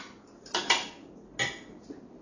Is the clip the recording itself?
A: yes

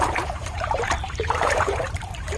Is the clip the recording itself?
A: no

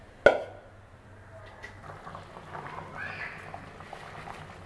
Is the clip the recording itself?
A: yes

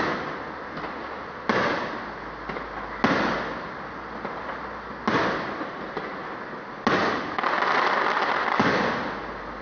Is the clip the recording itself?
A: yes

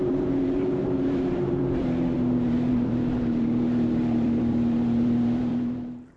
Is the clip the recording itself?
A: no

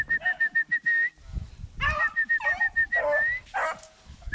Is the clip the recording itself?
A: yes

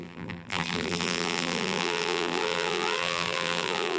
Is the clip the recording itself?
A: no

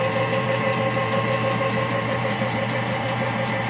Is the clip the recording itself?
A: no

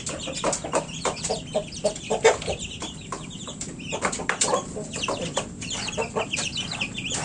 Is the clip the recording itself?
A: no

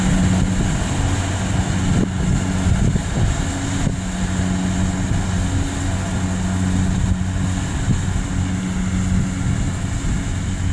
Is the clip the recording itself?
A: yes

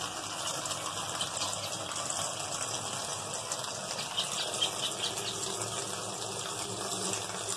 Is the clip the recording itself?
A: yes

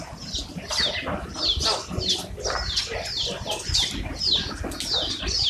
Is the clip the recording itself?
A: yes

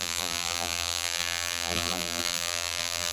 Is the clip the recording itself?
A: no